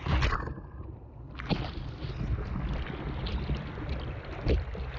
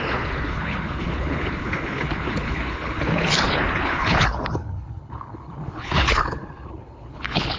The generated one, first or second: second